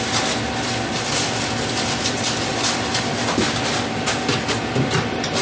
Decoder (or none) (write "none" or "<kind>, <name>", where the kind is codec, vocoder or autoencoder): none